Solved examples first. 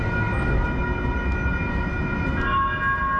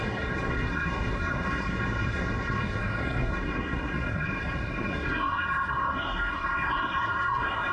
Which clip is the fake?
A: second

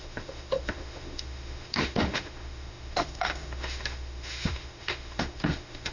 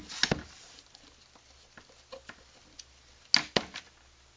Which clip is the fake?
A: first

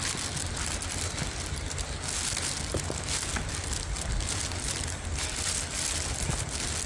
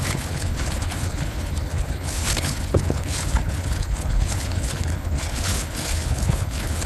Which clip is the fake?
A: second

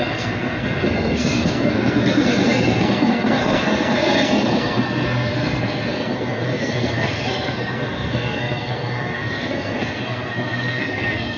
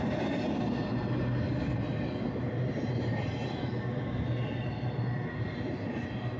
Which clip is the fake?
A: first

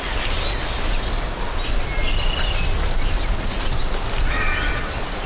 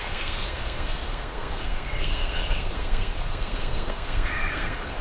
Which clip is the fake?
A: second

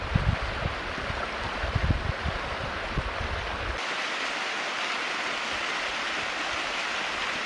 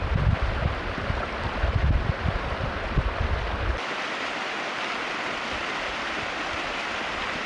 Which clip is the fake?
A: second